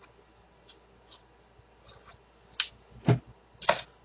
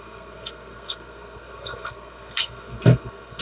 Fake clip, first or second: second